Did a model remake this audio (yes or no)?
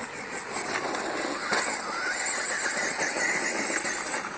no